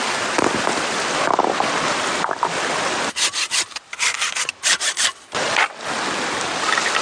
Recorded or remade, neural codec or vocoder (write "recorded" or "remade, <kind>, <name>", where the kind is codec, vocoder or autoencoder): recorded